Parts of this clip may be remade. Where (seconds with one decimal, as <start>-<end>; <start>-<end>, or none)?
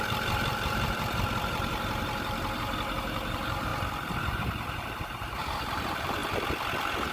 0.0-3.7; 4.3-6.2